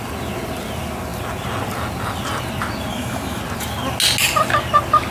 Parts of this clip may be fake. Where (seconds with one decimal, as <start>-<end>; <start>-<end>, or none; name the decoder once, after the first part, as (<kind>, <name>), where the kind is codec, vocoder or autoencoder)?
2.9-3.4 (autoencoder, DAC-VAE)